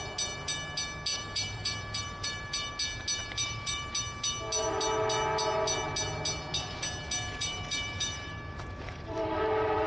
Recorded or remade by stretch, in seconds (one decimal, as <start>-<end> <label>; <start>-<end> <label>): 0.0-1.1 recorded; 1.1-2.7 remade; 2.7-3.2 recorded; 3.2-3.9 remade; 3.9-7.4 recorded; 7.4-9.9 remade